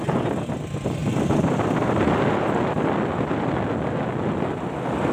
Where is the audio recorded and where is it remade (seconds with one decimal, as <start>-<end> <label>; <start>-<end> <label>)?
0.0-5.1 recorded